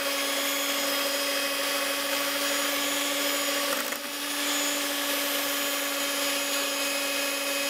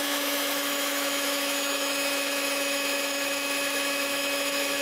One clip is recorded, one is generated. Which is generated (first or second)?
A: second